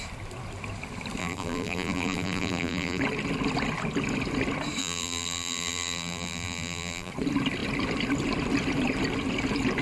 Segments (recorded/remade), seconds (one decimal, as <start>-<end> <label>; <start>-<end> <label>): 0.0-1.2 recorded; 1.2-3.0 remade; 3.0-4.8 recorded; 4.8-7.1 remade; 7.1-9.8 recorded